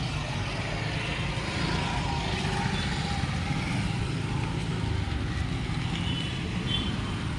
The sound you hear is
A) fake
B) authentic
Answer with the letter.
B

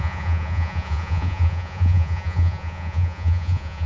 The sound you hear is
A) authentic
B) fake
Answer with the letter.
B